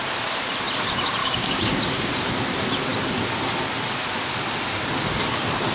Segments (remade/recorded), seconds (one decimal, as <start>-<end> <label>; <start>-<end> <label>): 0.0-1.2 recorded; 1.2-2.3 remade; 2.3-5.7 recorded